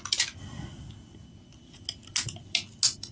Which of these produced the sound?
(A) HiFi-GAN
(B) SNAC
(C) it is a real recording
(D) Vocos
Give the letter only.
C